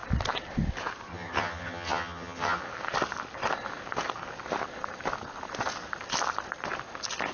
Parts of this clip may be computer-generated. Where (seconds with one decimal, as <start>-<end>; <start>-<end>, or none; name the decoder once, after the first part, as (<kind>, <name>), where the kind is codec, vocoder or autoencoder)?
1.1-2.6 (vocoder, HiFi-GAN)